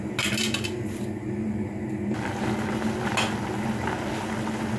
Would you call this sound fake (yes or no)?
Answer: no